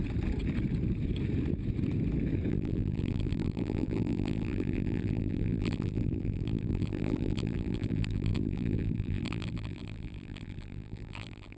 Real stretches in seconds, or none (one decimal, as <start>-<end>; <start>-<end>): 0.0-2.5